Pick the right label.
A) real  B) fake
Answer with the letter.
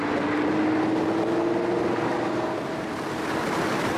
A